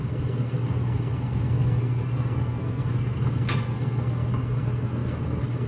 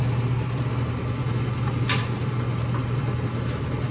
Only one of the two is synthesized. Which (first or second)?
first